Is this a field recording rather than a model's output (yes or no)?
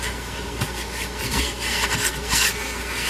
no